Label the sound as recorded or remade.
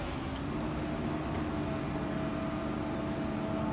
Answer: recorded